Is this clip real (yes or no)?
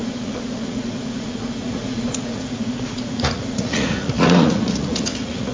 no